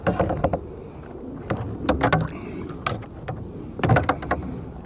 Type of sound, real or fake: real